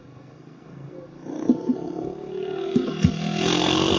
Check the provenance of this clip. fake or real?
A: fake